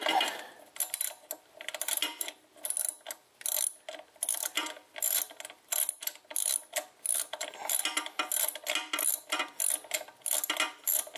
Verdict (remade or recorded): recorded